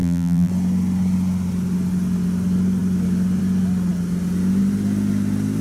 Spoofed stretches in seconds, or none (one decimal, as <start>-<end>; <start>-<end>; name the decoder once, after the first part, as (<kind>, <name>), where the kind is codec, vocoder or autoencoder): 0.0-0.5 (vocoder, BigVGAN v2)